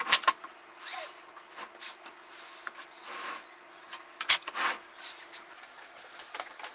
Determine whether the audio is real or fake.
real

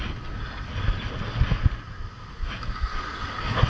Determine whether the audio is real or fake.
real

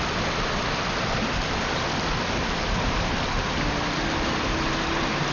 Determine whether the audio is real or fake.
real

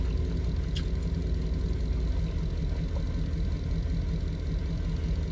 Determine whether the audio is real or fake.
real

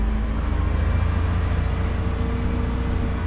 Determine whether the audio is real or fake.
real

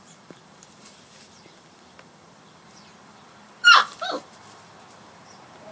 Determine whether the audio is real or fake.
fake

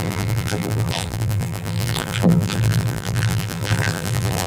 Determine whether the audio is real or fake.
fake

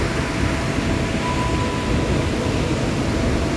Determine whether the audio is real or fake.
real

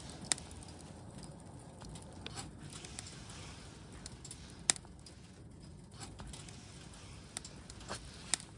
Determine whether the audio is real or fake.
real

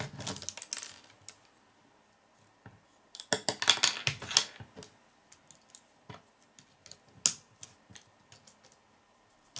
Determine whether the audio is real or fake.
real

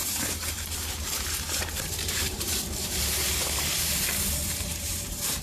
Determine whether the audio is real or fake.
fake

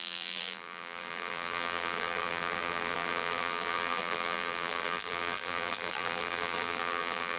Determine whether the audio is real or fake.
fake